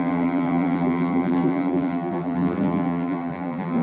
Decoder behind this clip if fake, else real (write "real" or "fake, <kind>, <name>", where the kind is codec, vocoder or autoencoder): fake, vocoder, BigVGAN v2